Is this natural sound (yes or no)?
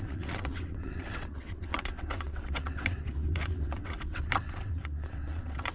no